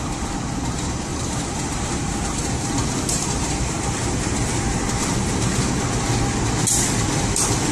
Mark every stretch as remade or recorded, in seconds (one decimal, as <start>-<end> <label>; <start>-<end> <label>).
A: 0.0-1.1 recorded; 1.1-5.7 remade; 5.7-7.7 recorded